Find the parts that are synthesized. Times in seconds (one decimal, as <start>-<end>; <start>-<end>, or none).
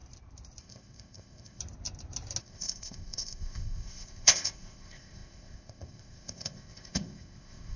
0.6-1.6; 2.4-7.8